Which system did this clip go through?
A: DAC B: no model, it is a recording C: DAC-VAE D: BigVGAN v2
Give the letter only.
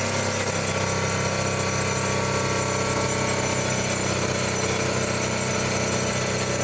B